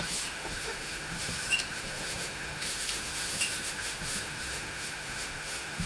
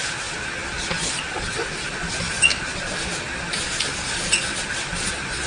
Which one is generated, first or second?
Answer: first